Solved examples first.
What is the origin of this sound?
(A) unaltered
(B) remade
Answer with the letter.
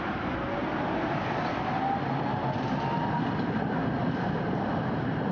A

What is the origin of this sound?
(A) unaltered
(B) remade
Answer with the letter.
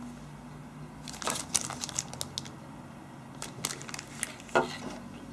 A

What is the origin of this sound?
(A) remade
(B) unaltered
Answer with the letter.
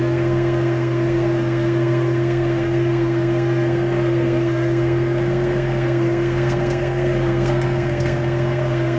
A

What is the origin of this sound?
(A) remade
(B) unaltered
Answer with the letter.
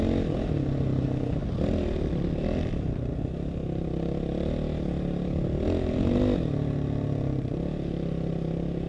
B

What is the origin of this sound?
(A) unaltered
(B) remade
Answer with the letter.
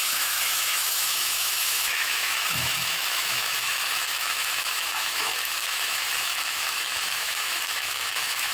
B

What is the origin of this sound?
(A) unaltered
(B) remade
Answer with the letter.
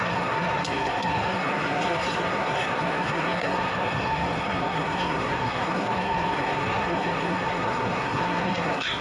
B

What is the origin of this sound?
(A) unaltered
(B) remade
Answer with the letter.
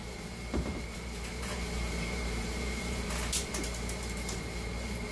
B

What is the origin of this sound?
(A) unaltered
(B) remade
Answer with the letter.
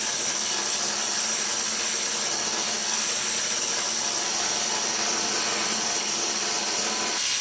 A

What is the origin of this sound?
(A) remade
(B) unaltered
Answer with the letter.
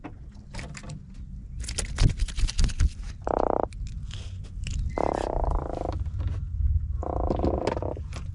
B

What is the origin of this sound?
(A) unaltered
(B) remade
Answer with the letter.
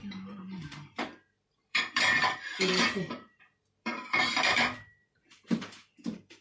B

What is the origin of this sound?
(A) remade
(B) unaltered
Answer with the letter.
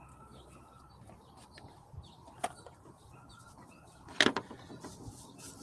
B